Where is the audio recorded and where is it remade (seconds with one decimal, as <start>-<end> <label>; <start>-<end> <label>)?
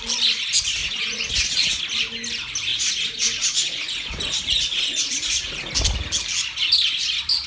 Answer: 0.0-0.8 recorded; 0.8-1.8 remade; 1.8-2.7 recorded; 2.7-5.7 remade; 5.7-7.5 recorded